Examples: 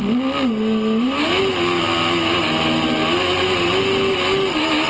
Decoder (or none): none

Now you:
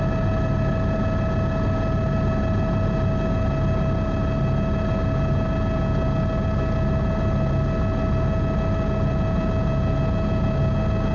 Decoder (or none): none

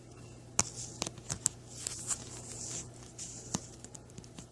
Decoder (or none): none